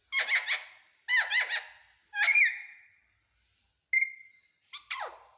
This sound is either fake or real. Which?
real